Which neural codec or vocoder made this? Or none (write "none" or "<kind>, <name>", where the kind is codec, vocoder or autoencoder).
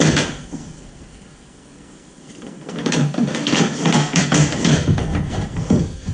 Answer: codec, SNAC